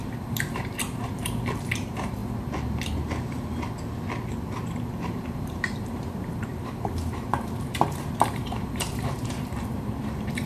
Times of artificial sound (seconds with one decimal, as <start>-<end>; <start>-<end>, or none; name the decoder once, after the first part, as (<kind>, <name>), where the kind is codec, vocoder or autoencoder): 0.0-2.2 (vocoder, BigVGAN v2); 4.3-10.5